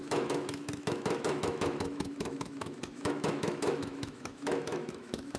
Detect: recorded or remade remade